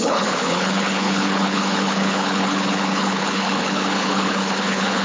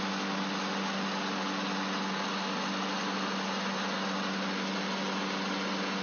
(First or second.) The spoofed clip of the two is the first